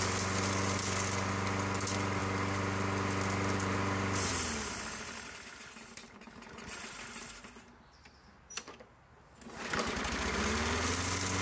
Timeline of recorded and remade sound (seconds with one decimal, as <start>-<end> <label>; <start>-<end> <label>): 0.0-2.2 recorded; 2.2-7.0 remade; 7.0-11.4 recorded